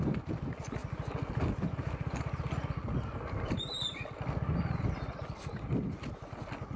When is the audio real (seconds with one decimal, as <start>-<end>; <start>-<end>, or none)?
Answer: 0.0-6.8